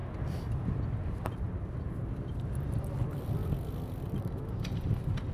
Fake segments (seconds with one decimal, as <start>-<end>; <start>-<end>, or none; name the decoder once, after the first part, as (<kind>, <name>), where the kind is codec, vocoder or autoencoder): 3.0-3.4 (vocoder, BigVGAN v2); 4.2-5.3